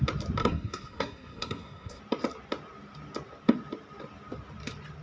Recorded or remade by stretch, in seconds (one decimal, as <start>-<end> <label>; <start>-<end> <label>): 0.0-0.4 recorded; 0.4-2.0 remade; 2.0-5.0 recorded